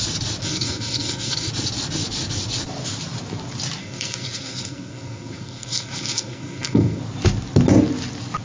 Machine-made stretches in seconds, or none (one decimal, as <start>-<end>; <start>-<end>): 0.4-1.5; 3.8-7.0